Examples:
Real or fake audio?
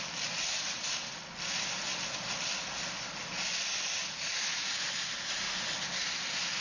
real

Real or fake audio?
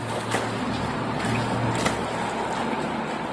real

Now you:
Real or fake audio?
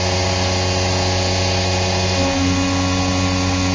real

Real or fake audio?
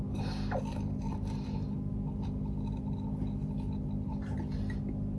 real